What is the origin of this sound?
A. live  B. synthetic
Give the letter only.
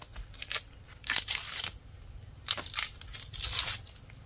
A